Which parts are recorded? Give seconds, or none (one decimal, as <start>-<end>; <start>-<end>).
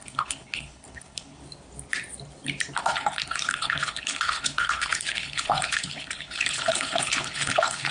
1.4-2.8